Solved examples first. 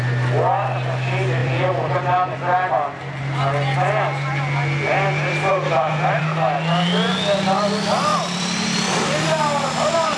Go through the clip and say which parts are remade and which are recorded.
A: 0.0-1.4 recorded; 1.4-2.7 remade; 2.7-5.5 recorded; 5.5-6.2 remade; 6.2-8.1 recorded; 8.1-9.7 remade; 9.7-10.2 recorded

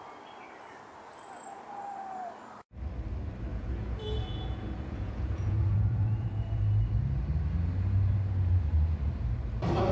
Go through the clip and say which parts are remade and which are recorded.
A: 0.0-3.5 recorded; 3.5-6.6 remade; 6.6-9.9 recorded

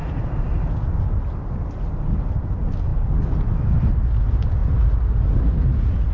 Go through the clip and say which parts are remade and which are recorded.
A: 0.0-6.1 recorded

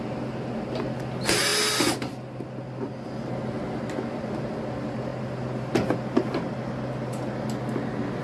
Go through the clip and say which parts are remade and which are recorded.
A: 0.0-8.2 recorded

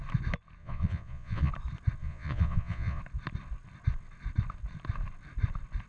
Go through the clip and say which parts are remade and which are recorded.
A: 0.0-0.6 recorded; 0.6-1.5 remade; 1.5-2.0 recorded; 2.0-3.0 remade; 3.0-5.9 recorded

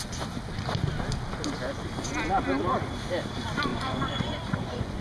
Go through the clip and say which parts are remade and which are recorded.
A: 0.0-3.7 recorded; 3.7-5.0 remade

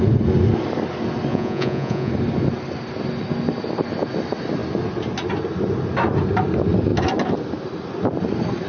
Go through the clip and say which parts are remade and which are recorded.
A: 0.0-1.3 recorded; 1.3-2.1 remade; 2.1-8.7 recorded

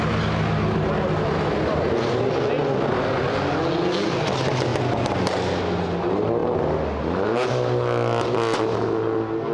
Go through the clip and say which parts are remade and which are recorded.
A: 0.0-9.5 recorded